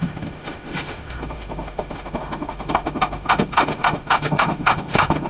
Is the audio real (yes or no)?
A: no